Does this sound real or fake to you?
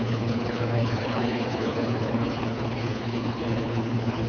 fake